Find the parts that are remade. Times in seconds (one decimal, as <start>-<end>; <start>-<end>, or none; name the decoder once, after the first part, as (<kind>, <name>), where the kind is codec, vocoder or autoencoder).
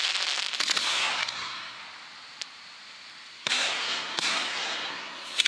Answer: 0.8-1.8 (codec, SNAC); 3.3-5.5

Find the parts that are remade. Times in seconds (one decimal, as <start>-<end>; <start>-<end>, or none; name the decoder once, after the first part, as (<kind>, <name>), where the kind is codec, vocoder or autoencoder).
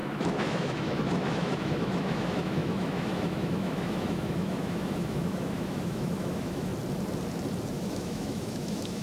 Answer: 0.0-6.7 (autoencoder, DAC-VAE); 7.7-9.0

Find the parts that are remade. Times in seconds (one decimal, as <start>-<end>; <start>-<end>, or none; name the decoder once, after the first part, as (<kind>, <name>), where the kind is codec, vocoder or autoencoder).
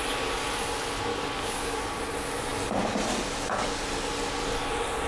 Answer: 1.1-1.8 (codec, DAC)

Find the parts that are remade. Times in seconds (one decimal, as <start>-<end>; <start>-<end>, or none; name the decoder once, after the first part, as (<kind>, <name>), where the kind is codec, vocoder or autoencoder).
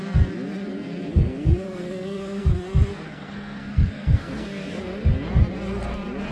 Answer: 1.1-2.5 (codec, SNAC); 2.9-4.8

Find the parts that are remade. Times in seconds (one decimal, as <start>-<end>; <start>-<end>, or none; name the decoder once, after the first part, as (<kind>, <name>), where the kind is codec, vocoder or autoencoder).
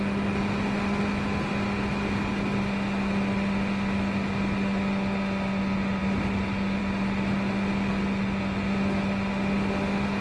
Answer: none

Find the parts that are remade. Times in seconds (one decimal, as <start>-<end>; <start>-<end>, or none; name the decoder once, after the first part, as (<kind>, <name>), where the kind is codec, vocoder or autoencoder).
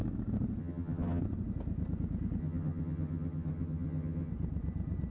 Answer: 0.6-1.2 (vocoder, HiFi-GAN); 2.4-4.3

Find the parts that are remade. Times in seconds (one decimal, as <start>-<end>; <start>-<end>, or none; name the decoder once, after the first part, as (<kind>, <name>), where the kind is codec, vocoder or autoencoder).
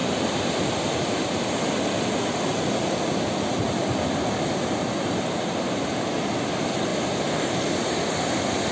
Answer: none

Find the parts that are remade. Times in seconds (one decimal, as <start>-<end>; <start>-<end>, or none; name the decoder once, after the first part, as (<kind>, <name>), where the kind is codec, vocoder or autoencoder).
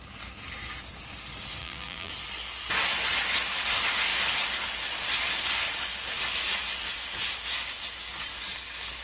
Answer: 1.6-2.1 (vocoder, BigVGAN v2)